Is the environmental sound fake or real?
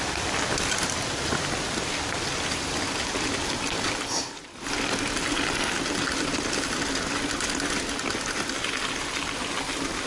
real